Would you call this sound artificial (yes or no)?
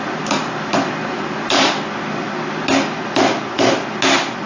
no